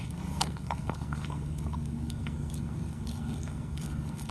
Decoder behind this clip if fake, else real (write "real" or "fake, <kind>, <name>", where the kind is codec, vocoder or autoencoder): fake, codec, SNAC